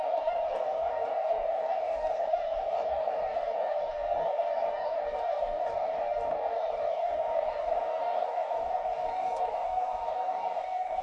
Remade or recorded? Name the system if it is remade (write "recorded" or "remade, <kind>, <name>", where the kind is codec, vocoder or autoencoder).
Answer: remade, codec, DAC